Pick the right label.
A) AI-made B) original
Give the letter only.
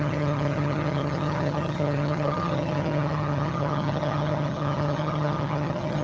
A